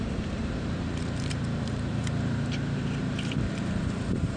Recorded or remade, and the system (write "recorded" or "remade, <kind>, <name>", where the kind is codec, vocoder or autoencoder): remade, vocoder, BigVGAN v2